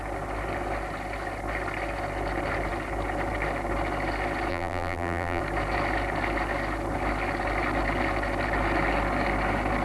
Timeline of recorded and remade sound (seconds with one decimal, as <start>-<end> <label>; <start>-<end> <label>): 0.0-4.5 recorded; 4.5-5.4 remade; 5.4-9.8 recorded